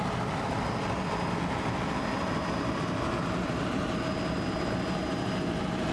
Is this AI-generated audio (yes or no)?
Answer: no